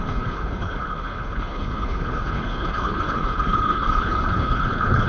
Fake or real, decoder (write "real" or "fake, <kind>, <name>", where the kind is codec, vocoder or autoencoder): fake, codec, HILCodec